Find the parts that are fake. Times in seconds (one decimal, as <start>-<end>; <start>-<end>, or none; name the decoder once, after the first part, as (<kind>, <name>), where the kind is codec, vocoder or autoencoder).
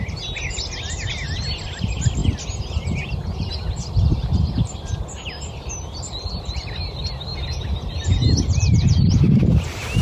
0.0-2.2 (vocoder, BigVGAN v2); 3.5-7.3; 7.9-10.0